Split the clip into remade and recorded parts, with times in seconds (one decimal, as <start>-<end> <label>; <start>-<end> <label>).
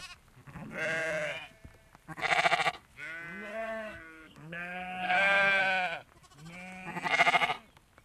0.0-3.5 recorded; 3.5-5.6 remade; 5.6-8.0 recorded